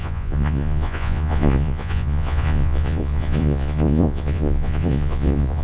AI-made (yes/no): yes